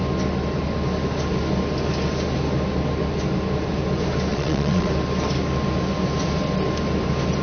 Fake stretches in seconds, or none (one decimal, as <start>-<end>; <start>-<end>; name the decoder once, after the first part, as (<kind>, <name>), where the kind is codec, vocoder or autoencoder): 4.3-4.9 (vocoder, WaveNeXt)